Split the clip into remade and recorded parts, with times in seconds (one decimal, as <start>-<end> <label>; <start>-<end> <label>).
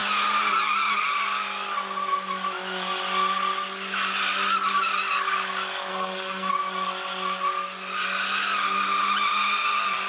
0.0-5.9 recorded; 5.9-6.5 remade; 6.5-10.1 recorded